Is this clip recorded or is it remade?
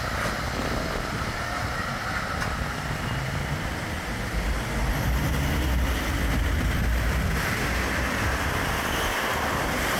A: recorded